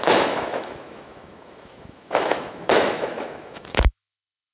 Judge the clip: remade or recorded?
remade